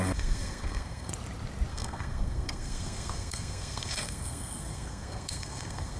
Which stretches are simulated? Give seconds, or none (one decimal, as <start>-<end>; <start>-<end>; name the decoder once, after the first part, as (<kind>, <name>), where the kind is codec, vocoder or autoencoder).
0.0-1.1 (codec, SNAC); 1.7-6.0